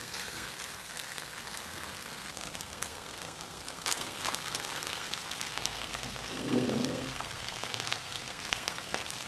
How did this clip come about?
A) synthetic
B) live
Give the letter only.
A